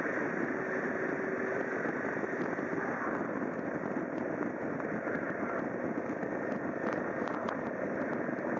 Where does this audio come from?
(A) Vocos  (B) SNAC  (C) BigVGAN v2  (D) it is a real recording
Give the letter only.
D